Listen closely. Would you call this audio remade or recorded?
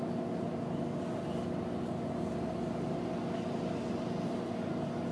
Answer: recorded